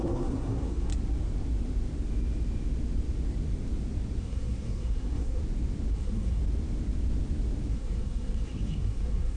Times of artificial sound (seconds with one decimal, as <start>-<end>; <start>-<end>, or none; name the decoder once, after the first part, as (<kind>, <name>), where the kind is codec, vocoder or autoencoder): 0.0-0.9 (codec, SNAC); 4.2-5.4; 5.9-6.4; 7.7-9.4